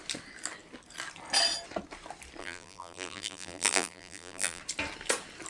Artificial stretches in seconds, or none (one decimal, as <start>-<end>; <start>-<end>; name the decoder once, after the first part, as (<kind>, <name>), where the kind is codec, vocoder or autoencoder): 2.4-4.6 (vocoder, BigVGAN v2)